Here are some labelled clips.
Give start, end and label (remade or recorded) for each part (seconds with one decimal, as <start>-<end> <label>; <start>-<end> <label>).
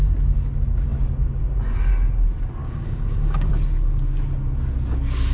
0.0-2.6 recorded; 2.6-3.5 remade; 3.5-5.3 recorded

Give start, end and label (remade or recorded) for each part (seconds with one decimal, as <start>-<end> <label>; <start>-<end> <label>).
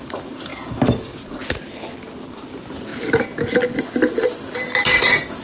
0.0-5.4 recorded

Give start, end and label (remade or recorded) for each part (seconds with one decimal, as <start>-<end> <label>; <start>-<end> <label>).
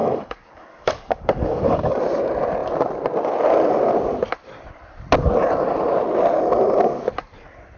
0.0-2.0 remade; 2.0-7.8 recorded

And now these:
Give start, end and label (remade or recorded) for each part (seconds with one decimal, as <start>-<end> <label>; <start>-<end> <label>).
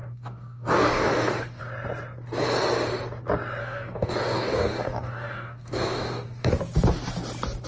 0.0-1.6 remade; 1.6-3.6 recorded; 3.6-6.5 remade; 6.5-7.7 recorded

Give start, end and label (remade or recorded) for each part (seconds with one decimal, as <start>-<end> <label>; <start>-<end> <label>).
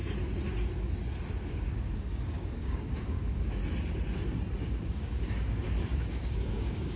0.0-1.5 recorded; 1.5-3.6 remade; 3.6-4.6 recorded; 4.6-7.0 remade